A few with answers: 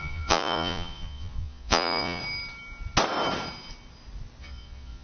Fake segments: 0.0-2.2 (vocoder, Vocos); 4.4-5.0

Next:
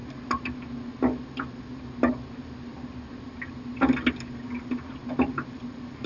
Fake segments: none

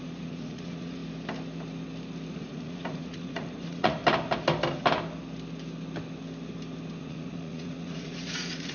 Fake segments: 0.0-1.0 (vocoder, Vocos); 2.3-4.0; 7.0-8.7